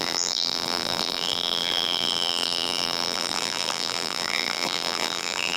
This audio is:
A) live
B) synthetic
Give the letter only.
B